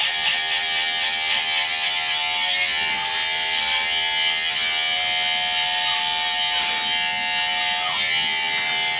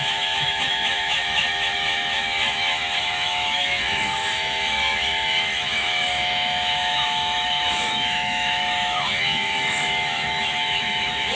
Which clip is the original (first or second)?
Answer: first